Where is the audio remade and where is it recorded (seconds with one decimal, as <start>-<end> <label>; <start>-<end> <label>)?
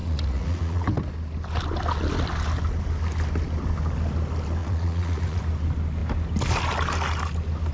0.0-0.9 remade; 0.9-4.6 recorded; 4.6-5.4 remade; 5.4-7.7 recorded